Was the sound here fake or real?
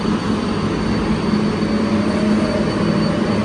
real